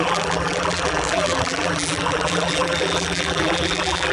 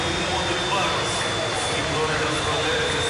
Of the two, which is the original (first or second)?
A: second